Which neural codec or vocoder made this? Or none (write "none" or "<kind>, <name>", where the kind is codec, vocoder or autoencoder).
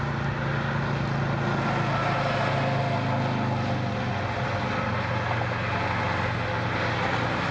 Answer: none